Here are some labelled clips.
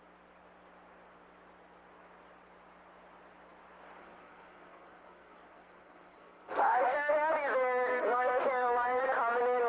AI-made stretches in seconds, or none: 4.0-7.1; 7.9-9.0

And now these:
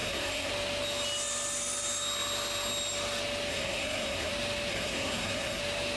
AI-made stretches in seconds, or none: 0.0-0.5; 3.5-4.3; 4.7-5.6